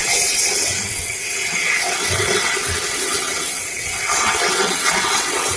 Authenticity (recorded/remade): remade